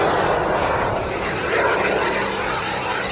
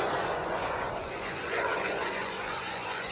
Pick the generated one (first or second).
second